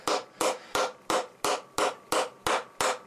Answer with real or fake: real